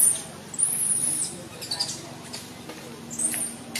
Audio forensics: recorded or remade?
recorded